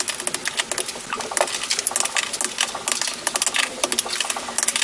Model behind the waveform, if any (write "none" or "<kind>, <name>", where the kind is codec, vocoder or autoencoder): none